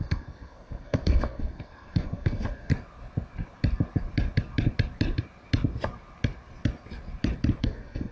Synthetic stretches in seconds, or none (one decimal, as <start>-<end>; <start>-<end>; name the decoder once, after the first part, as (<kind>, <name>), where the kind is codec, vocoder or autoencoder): 0.0-2.7 (codec, SNAC); 7.6-8.1